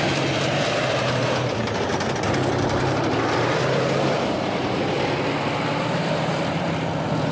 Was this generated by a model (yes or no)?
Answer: yes